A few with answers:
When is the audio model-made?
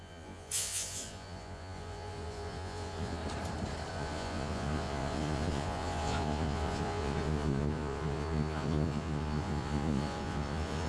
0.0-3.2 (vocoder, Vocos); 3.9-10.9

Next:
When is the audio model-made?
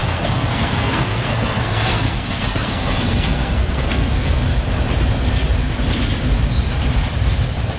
0.0-4.4 (codec, SNAC)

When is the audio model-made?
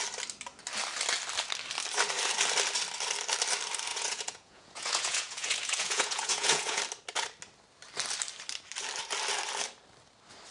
3.9-6.8 (vocoder, Vocos)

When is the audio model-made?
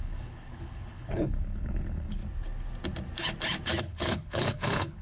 0.0-2.2 (codec, HILCodec); 3.8-5.0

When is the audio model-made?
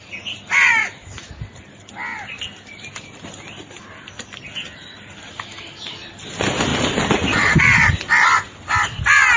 0.8-1.3 (autoencoder, DAC-VAE)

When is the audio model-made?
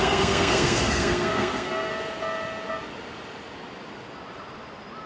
0.0-1.9 (codec, SNAC)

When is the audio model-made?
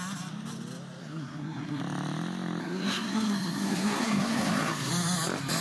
1.0-1.8 (codec, SNAC); 2.6-4.9